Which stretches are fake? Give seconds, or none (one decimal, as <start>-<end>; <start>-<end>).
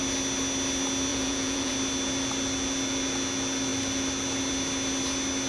1.1-1.7